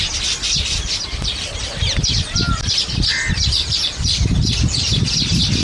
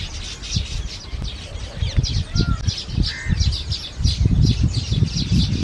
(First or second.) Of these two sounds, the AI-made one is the first